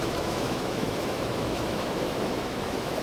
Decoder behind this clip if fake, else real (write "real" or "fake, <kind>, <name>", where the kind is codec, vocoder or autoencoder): fake, autoencoder, DAC-VAE